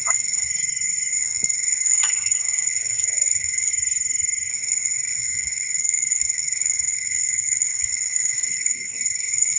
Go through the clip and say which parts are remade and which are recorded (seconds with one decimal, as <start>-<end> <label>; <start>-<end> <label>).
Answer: 0.0-0.5 remade; 0.5-1.1 recorded; 1.1-3.7 remade; 3.7-4.5 recorded; 4.5-9.6 remade